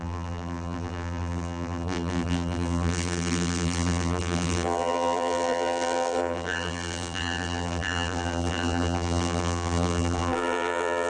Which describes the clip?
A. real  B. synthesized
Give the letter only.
B